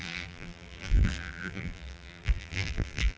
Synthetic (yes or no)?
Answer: yes